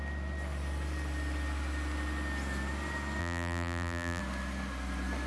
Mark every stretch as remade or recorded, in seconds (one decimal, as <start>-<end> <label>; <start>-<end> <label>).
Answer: 0.0-3.2 recorded; 3.2-4.2 remade; 4.2-5.3 recorded